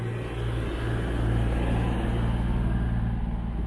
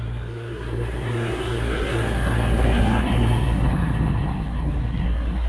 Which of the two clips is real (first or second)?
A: first